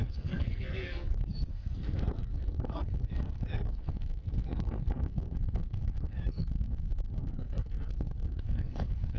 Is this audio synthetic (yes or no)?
yes